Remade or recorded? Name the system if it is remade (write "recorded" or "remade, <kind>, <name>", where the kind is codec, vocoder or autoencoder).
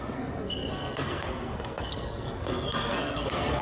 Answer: remade, codec, SNAC